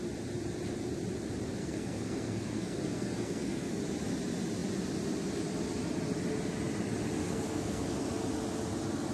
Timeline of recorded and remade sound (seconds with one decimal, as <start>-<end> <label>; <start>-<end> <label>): 0.0-1.6 recorded; 1.6-3.8 remade; 3.8-7.2 recorded; 7.2-8.1 remade; 8.1-9.1 recorded